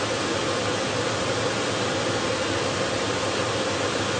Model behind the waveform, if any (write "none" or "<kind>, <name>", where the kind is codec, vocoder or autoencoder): none